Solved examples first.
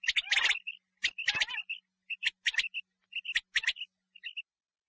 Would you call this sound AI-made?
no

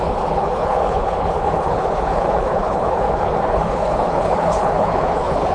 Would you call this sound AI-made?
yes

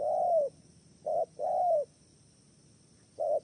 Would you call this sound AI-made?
no